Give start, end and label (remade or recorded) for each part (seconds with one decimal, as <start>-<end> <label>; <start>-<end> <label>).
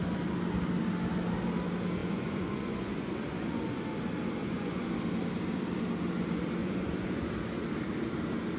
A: 0.0-2.0 recorded; 2.0-3.6 remade; 3.6-4.4 recorded; 4.4-4.9 remade; 4.9-6.6 recorded; 6.6-7.3 remade; 7.3-8.6 recorded